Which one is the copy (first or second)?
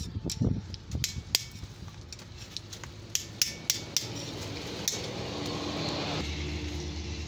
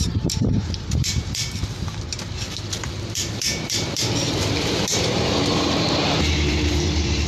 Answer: second